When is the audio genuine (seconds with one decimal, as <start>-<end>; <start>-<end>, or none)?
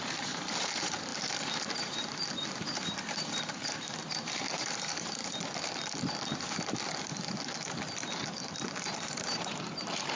5.2-9.0